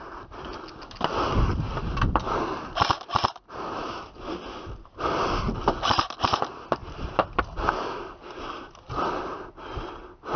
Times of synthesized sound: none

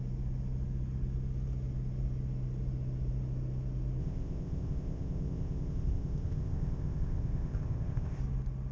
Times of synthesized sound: 4.0-8.2 (codec, ZipCodec)

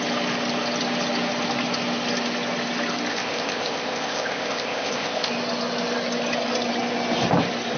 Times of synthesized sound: 3.1-5.3 (codec, ZipCodec)